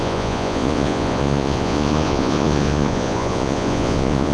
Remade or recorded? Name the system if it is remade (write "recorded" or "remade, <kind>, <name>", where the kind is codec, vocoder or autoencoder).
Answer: remade, vocoder, Vocos